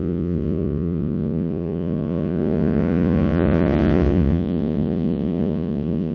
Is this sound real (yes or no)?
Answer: no